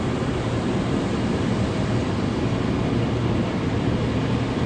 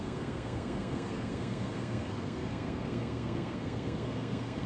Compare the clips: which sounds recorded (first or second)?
first